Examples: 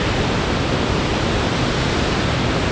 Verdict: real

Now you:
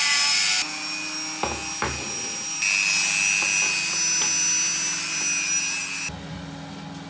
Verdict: real